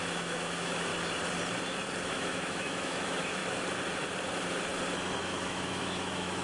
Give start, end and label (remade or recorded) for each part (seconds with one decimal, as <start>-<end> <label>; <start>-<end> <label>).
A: 0.0-0.9 remade; 0.9-2.1 recorded; 2.1-3.4 remade; 3.4-5.2 recorded; 5.2-6.4 remade